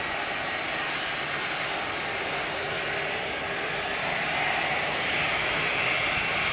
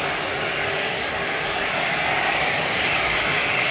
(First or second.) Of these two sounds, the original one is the first